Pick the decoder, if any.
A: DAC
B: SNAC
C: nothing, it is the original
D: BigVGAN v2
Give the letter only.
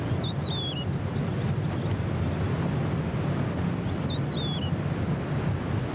C